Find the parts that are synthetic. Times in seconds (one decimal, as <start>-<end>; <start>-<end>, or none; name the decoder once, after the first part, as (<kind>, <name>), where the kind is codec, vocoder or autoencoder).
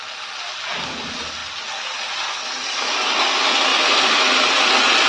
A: none